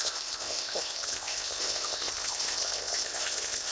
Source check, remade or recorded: remade